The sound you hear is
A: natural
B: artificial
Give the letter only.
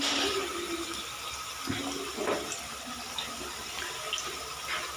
A